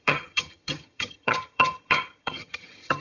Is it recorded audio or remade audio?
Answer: remade